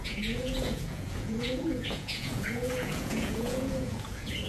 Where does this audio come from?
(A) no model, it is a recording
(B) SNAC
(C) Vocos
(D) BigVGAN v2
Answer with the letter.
C